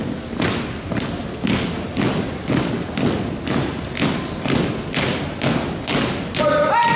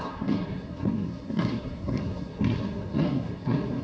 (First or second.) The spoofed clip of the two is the second